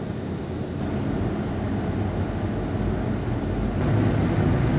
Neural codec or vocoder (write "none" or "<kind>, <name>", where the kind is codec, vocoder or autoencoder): none